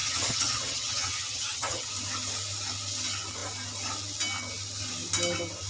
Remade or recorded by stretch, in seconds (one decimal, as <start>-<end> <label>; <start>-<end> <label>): 0.0-1.9 remade; 1.9-5.7 recorded